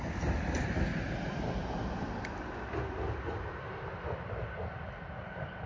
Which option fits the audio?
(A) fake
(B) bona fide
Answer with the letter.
B